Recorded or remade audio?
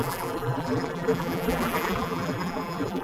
remade